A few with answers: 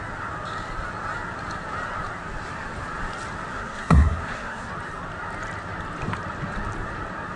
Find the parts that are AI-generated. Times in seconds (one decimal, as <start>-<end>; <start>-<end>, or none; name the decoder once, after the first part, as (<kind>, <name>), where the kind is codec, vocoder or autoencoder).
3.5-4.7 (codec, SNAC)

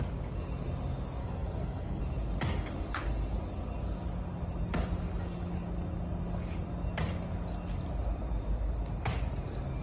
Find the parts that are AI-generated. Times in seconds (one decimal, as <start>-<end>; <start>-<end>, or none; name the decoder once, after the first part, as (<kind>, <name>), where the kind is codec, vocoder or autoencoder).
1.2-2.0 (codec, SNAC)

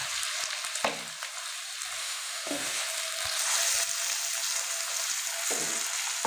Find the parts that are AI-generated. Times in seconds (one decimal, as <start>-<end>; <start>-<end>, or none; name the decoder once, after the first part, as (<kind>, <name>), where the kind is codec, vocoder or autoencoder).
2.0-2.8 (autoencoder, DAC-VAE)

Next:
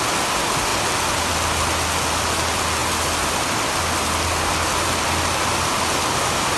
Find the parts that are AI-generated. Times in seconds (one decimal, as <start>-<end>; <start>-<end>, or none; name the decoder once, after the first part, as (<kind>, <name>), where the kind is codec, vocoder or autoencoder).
none

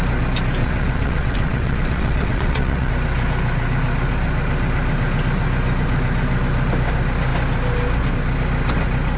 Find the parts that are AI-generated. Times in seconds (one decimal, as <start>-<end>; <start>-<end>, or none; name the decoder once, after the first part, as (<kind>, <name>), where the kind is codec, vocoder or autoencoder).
0.6-2.9 (vocoder, WaveNeXt)

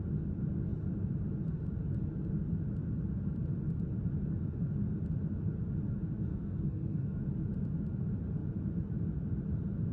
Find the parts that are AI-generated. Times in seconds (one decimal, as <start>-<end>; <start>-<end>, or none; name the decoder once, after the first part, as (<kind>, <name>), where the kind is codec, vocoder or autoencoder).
6.3-7.3 (codec, SNAC)